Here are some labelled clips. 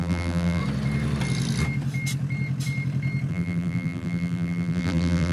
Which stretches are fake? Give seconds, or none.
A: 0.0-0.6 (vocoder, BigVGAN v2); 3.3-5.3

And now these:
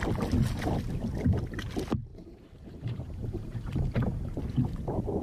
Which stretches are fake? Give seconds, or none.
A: 2.1-4.4 (vocoder, BigVGAN v2)

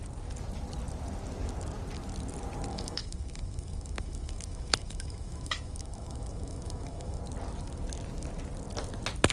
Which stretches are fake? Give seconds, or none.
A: 2.7-7.2 (autoencoder, DAC-VAE)

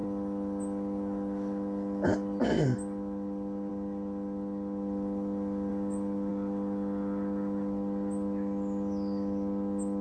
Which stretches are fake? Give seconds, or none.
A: none

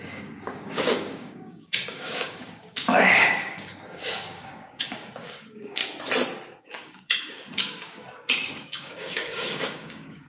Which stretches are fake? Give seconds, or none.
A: 0.0-5.8 (codec, DAC); 6.6-10.3

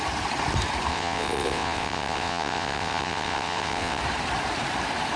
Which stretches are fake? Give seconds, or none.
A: 0.9-4.0 (vocoder, WaveNeXt)